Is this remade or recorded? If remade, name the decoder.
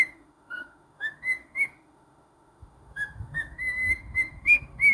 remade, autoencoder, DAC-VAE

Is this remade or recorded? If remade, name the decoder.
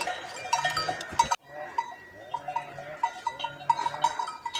recorded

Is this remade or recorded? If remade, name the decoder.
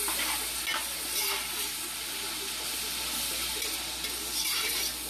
recorded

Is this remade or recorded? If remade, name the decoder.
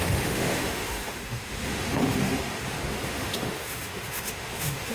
remade, autoencoder, DAC-VAE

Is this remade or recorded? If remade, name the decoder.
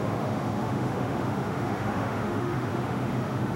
remade, autoencoder, DAC-VAE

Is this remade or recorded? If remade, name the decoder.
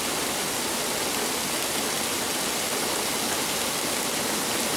recorded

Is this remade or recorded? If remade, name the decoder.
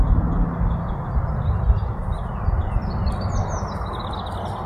recorded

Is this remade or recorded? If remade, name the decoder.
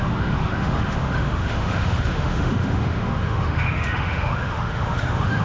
remade, autoencoder, DAC-VAE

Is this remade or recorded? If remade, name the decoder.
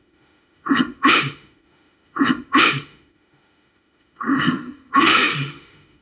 remade, autoencoder, DAC-VAE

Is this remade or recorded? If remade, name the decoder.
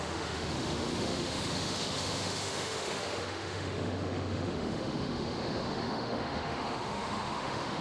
remade, autoencoder, DAC-VAE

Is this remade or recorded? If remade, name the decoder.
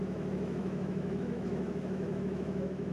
remade, autoencoder, DAC-VAE